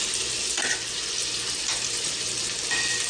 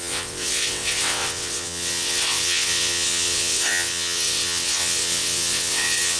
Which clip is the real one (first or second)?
first